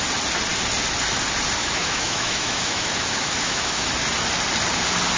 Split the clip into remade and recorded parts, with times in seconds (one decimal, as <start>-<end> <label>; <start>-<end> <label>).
0.0-1.6 recorded; 1.6-3.8 remade; 3.8-5.2 recorded